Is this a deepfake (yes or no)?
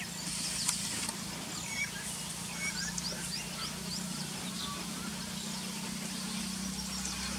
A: no